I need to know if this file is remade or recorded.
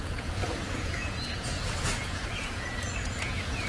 remade